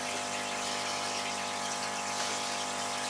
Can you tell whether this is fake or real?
real